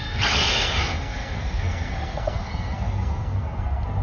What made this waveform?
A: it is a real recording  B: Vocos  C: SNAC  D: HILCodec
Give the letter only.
C